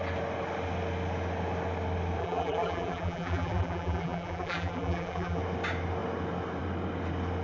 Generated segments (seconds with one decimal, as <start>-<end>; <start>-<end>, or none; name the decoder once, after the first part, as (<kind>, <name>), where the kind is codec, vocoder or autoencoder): 2.2-5.4 (vocoder, BigVGAN v2)